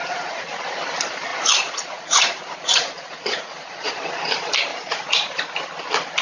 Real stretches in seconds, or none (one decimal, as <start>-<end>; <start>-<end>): 0.6-1.3; 3.9-4.7; 5.3-6.2